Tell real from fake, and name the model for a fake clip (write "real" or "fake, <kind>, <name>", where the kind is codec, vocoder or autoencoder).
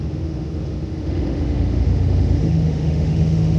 fake, autoencoder, DAC-VAE